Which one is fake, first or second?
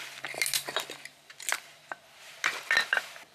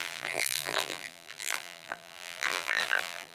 second